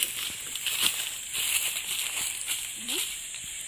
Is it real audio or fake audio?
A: fake